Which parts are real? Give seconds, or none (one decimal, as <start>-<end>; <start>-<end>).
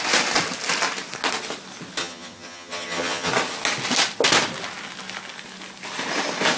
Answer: 0.0-2.0; 3.3-6.6